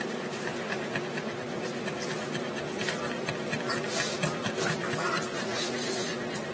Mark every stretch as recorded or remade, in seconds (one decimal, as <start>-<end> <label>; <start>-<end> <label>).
0.0-0.5 recorded; 0.5-1.0 remade; 1.0-6.5 recorded